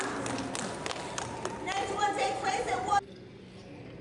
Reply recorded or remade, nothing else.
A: recorded